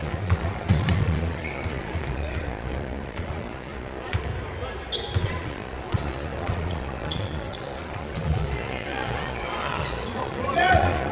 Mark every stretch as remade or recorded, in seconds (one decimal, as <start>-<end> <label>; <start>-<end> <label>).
0.0-4.3 remade; 4.3-5.2 recorded; 5.2-11.1 remade